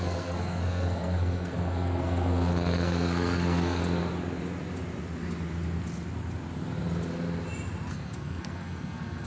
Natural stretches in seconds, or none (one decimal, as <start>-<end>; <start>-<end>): 3.8-7.9